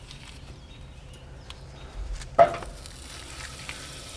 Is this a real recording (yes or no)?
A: no